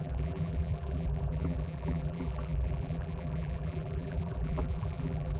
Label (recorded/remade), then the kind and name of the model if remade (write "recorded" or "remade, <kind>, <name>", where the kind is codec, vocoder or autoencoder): remade, vocoder, BigVGAN v2